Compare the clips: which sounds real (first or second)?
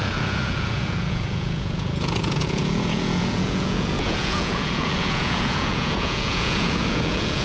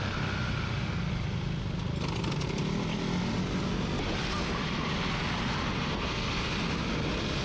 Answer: second